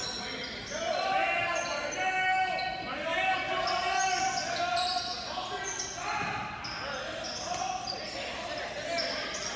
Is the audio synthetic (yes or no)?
no